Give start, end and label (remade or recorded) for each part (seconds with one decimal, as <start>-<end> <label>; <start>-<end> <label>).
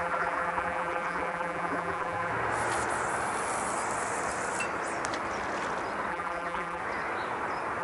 0.0-2.3 remade; 2.3-6.1 recorded; 6.1-6.8 remade; 6.8-7.8 recorded